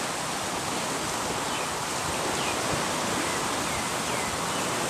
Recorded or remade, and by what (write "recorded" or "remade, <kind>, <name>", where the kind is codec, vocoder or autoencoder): recorded